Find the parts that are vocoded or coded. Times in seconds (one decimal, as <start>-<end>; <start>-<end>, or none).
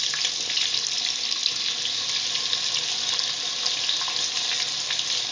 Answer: none